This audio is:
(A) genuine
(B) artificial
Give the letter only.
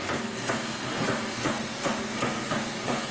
B